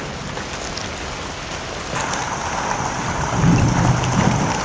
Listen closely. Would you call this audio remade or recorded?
recorded